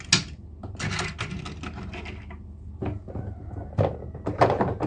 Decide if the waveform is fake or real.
real